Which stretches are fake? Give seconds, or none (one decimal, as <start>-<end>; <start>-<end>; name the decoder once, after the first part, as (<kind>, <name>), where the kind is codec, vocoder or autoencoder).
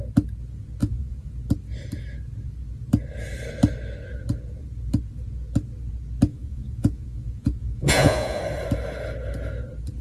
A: 0.8-1.3 (vocoder, Vocos); 6.3-8.4